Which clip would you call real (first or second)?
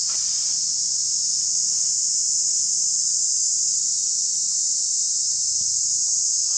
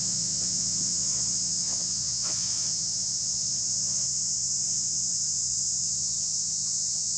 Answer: first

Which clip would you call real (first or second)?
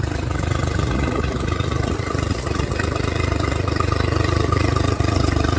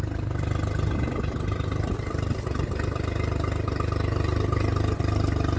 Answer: second